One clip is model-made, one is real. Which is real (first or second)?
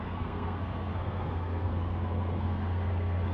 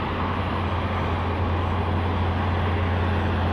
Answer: second